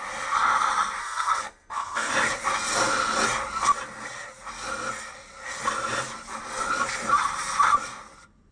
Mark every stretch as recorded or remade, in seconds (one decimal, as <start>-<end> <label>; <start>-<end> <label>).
0.0-1.0 recorded; 1.0-2.1 remade; 2.1-8.5 recorded